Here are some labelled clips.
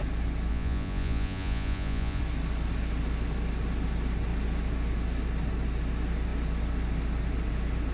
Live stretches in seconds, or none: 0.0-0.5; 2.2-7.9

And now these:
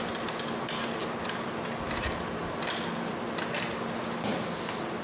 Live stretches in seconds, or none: 0.0-5.0